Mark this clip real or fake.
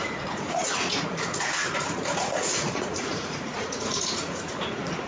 fake